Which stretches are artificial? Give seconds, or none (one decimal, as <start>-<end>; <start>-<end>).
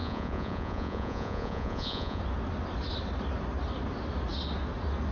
0.0-2.2